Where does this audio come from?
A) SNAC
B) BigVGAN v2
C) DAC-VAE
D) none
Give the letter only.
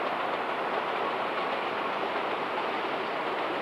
D